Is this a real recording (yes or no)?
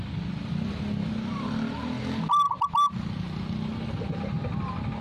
yes